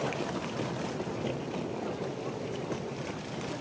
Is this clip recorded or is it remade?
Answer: recorded